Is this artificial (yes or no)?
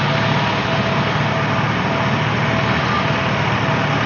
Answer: no